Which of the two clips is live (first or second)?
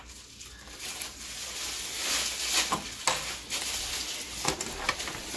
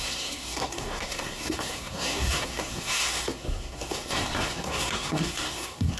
first